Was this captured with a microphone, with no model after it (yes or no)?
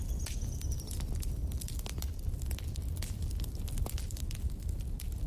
yes